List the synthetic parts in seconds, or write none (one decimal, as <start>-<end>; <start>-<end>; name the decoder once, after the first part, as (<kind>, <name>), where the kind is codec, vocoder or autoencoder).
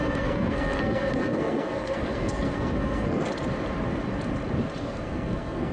0.0-3.3 (codec, SNAC); 4.8-5.7